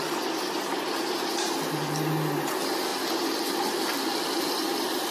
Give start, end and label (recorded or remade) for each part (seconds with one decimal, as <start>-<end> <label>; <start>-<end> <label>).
0.0-5.1 recorded